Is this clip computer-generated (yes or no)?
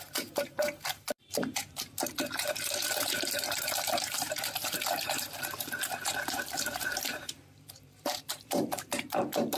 yes